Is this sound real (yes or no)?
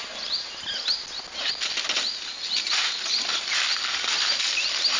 yes